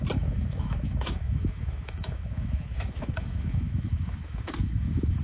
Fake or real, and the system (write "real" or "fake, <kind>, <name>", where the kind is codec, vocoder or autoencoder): fake, autoencoder, DAC-VAE